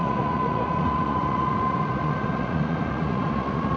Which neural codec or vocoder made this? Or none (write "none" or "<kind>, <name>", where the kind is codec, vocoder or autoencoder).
vocoder, Vocos